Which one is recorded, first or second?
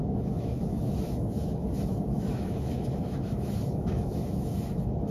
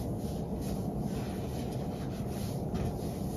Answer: second